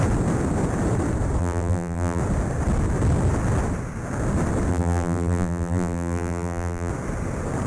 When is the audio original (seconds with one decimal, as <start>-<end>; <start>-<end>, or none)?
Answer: 0.0-1.4; 2.2-4.7; 6.9-7.7